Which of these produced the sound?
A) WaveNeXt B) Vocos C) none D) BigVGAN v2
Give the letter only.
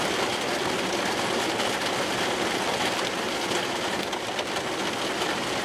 C